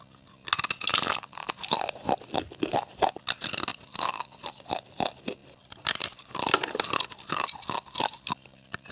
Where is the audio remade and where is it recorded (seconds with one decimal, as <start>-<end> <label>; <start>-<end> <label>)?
0.0-3.7 recorded; 3.7-4.6 remade; 4.6-5.4 recorded; 5.4-8.9 remade